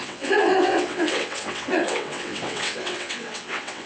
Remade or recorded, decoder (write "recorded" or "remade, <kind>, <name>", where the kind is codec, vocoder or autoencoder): remade, vocoder, WaveNeXt